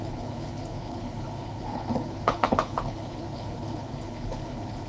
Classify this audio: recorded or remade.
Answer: remade